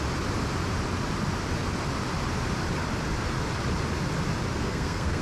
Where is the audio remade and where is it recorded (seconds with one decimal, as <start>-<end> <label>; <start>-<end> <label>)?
0.0-4.5 recorded; 4.5-5.2 remade

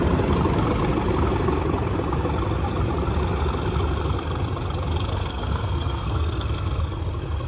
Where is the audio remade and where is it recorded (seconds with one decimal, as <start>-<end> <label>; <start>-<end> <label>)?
0.0-5.1 recorded; 5.1-7.0 remade; 7.0-7.5 recorded

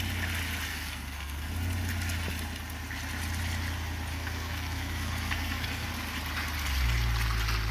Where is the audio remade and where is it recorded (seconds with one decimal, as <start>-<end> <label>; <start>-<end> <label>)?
0.0-0.7 recorded; 0.7-1.5 remade; 1.5-4.1 recorded; 4.1-5.9 remade; 5.9-7.7 recorded

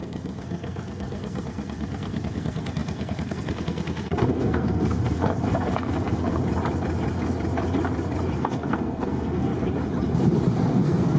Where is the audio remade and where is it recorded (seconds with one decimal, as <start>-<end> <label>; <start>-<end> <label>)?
0.0-6.4 remade; 6.4-8.4 recorded; 8.4-9.5 remade; 9.5-10.7 recorded; 10.7-11.2 remade

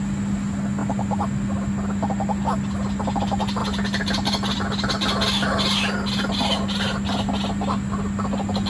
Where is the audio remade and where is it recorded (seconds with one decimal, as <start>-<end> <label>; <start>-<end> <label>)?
0.0-8.7 recorded

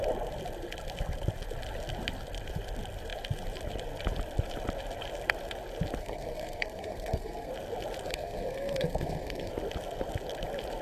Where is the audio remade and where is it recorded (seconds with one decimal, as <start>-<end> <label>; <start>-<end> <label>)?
0.0-6.0 recorded; 6.0-7.5 remade; 7.5-8.1 recorded; 8.1-9.5 remade; 9.5-10.8 recorded

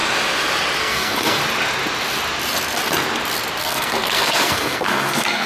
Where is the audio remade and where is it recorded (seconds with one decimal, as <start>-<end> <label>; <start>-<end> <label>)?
0.0-0.8 recorded; 0.8-1.4 remade; 1.4-3.6 recorded; 3.6-5.5 remade